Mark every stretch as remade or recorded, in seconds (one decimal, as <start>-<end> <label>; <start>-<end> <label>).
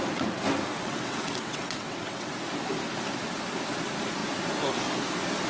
0.0-0.7 recorded; 0.7-2.3 remade; 2.3-5.5 recorded